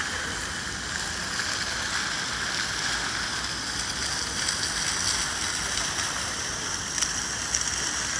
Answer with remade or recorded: recorded